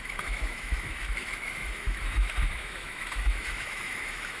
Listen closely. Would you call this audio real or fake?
fake